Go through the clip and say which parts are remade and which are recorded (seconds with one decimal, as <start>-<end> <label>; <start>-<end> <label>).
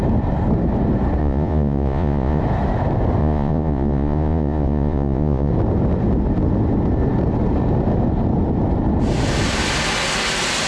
0.0-1.2 recorded; 1.2-2.4 remade; 2.4-3.2 recorded; 3.2-5.5 remade; 5.5-10.7 recorded